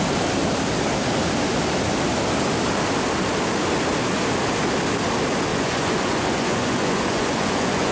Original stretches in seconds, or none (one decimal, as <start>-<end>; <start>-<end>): 0.0-5.5